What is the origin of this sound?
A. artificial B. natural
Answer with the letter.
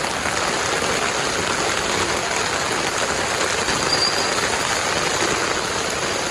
B